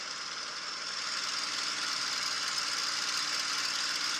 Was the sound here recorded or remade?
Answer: recorded